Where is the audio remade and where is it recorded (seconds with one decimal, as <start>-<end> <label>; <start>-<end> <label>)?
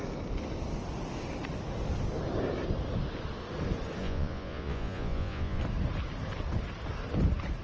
0.0-4.0 recorded; 4.0-5.6 remade; 5.6-7.6 recorded